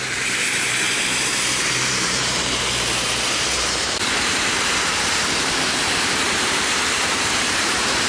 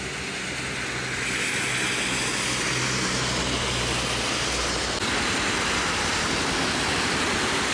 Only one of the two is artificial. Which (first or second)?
first